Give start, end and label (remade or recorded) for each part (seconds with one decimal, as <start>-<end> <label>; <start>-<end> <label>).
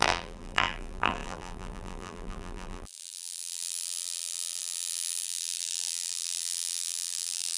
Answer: 0.0-7.6 remade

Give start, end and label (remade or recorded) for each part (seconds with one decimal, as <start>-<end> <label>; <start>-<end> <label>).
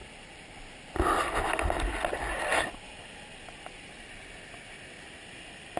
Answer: 0.0-5.8 recorded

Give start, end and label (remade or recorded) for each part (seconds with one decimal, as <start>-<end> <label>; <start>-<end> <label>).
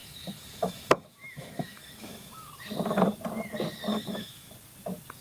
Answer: 0.0-2.5 remade; 2.5-3.9 recorded; 3.9-4.5 remade; 4.5-5.2 recorded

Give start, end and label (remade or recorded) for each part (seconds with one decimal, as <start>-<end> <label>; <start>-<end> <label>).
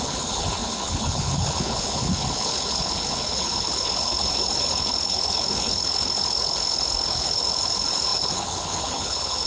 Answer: 0.0-9.5 remade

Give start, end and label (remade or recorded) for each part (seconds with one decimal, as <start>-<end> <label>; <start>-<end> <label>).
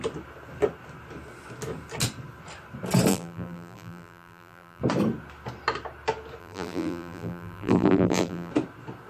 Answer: 0.0-3.1 recorded; 3.1-4.8 remade; 4.8-6.4 recorded; 6.4-8.5 remade; 8.5-9.1 recorded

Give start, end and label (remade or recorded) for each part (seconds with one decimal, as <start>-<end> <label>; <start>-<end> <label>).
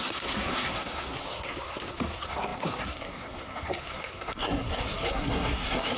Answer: 0.0-6.0 remade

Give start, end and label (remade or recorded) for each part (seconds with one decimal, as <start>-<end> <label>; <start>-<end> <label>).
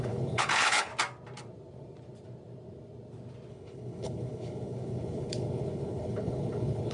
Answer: 0.0-0.9 remade; 0.9-3.5 recorded; 3.5-6.9 remade